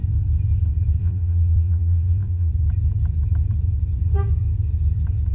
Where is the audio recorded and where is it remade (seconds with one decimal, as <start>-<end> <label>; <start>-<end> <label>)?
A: 0.0-1.0 recorded; 1.0-2.5 remade; 2.5-5.3 recorded